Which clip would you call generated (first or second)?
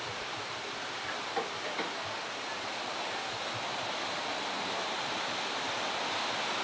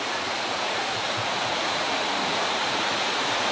second